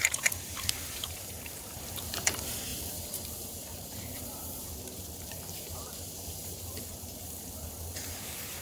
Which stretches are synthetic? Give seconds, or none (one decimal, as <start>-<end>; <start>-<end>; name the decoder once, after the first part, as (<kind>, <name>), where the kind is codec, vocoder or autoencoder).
0.0-8.6 (vocoder, BigVGAN v2)